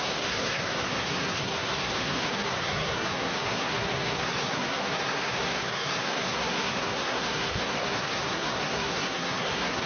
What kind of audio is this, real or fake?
fake